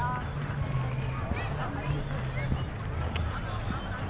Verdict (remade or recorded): recorded